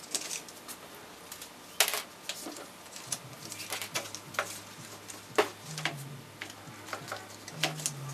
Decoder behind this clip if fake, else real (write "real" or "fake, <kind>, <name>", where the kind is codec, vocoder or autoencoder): real